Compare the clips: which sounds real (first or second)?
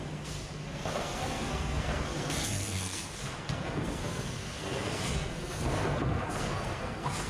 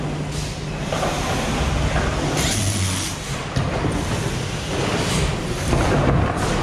second